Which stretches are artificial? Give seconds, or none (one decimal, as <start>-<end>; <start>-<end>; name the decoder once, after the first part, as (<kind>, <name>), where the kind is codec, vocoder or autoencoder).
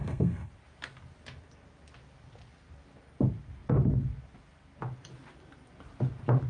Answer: 0.0-0.5 (codec, SNAC)